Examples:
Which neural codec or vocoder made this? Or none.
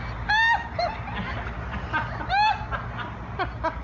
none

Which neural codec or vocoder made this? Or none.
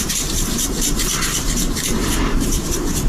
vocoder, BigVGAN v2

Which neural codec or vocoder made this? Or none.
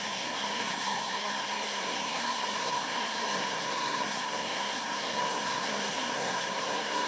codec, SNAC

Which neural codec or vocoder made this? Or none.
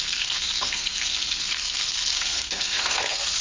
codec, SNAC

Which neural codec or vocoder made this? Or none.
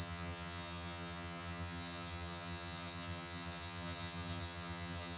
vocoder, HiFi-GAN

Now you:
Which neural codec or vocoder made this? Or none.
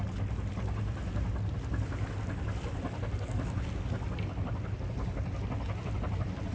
none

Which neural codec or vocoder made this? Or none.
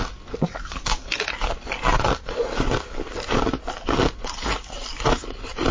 none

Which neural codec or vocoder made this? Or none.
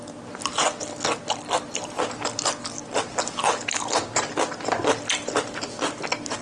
none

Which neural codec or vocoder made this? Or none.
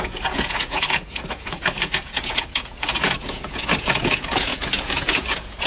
vocoder, Vocos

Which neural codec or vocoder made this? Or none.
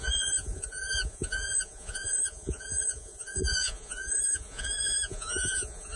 vocoder, Vocos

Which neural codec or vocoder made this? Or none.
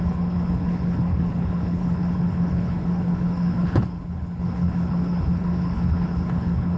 codec, HILCodec